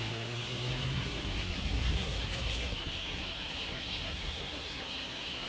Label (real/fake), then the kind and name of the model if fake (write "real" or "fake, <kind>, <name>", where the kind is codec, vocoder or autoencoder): fake, codec, SNAC